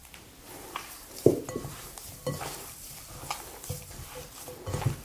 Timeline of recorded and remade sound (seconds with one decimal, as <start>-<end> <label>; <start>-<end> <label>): 0.0-1.9 remade; 1.9-5.0 recorded